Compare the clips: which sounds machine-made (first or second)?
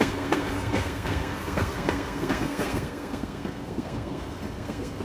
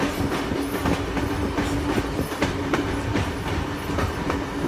first